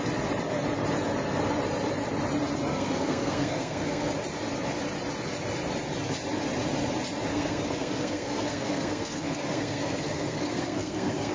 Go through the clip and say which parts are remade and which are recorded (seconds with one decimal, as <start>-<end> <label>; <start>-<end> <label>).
0.0-2.7 recorded; 2.7-4.1 remade; 4.1-7.3 recorded; 7.3-11.3 remade